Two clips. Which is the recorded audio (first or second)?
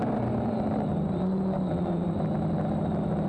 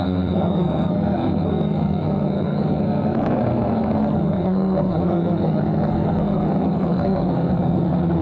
first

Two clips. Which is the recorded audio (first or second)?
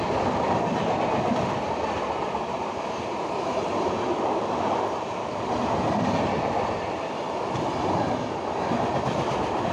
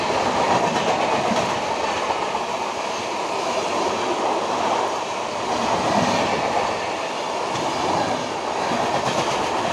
second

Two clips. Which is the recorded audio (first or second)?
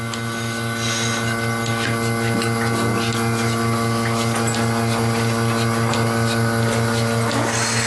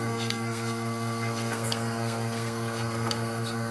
first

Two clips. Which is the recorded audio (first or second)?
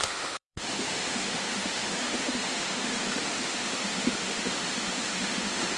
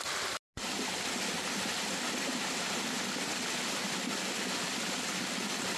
second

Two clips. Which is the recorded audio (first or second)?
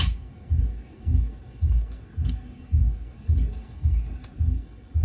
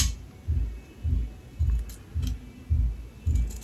second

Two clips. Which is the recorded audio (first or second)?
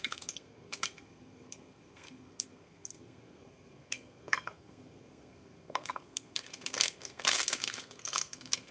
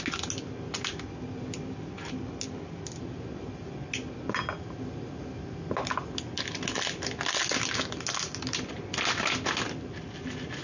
second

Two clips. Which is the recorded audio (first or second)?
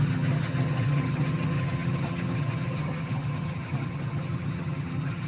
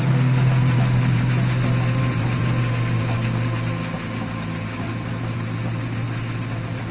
second